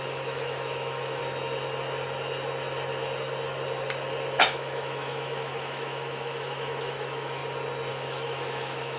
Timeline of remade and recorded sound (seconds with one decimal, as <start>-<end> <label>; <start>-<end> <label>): 0.0-1.2 remade; 1.2-4.4 recorded; 4.4-7.4 remade; 7.4-7.9 recorded; 7.9-9.0 remade